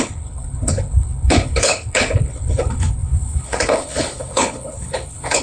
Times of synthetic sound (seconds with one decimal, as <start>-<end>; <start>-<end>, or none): 0.0-5.4